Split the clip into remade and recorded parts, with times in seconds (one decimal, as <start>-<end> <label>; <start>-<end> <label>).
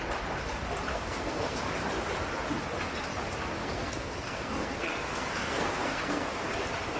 0.0-0.9 recorded; 0.9-1.7 remade; 1.7-3.6 recorded; 3.6-6.5 remade; 6.5-7.0 recorded